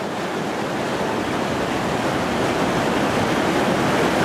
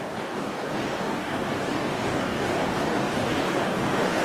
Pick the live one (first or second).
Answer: first